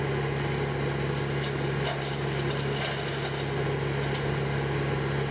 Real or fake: real